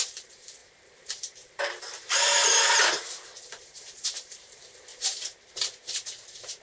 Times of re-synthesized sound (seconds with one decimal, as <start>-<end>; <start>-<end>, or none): 0.0-6.6